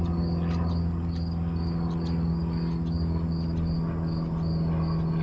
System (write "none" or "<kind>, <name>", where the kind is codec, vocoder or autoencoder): none